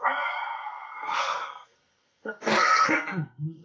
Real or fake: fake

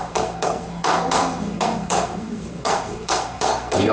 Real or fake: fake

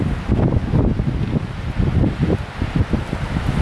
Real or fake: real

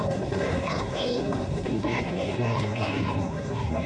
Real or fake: fake